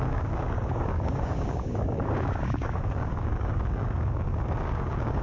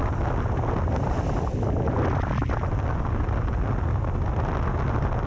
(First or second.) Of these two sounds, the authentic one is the second